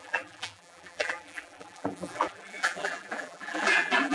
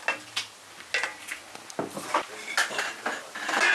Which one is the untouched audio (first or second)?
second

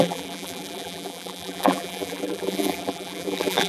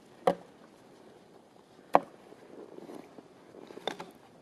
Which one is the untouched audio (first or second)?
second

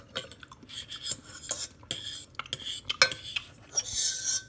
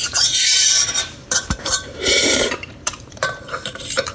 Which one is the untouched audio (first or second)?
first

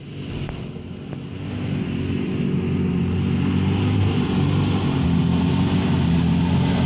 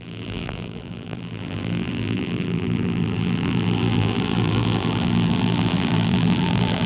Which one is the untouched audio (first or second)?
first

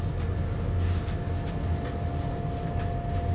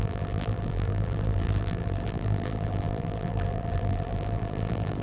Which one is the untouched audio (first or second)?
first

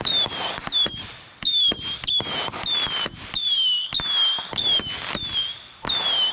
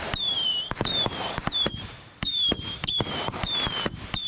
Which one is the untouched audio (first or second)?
first